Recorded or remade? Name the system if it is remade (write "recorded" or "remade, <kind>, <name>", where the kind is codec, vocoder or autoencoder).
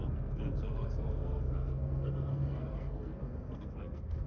remade, codec, SNAC